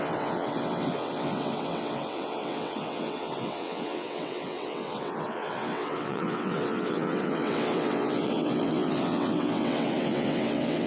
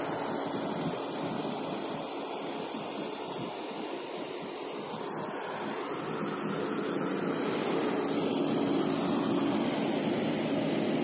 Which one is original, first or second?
second